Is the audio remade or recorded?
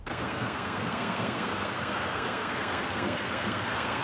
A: remade